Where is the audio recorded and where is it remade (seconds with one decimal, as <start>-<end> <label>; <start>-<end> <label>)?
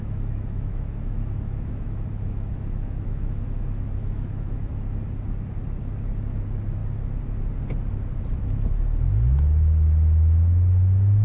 0.0-4.7 remade; 4.7-11.2 recorded